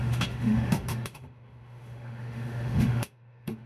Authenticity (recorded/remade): remade